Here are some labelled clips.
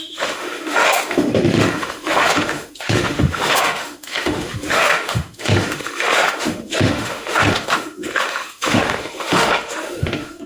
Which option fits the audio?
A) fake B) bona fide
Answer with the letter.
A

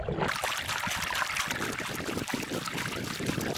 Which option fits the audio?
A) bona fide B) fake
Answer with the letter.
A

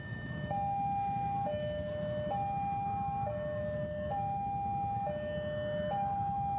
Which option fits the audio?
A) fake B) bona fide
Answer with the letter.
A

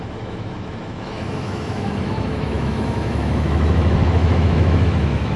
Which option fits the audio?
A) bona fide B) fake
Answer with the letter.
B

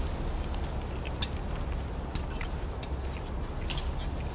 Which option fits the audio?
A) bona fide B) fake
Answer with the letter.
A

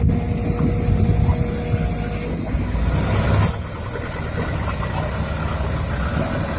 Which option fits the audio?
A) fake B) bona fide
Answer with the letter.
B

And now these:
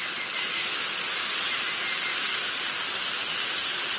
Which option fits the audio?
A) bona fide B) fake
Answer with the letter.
A